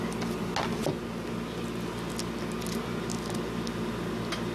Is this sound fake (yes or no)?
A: no